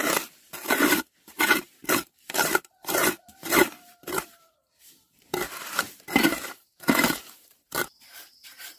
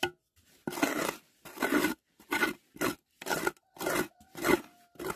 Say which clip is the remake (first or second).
first